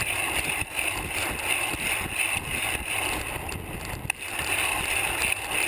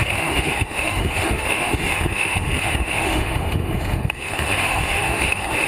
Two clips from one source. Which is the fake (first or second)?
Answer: second